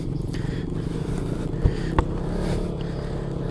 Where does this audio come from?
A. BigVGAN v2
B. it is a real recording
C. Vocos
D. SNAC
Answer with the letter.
B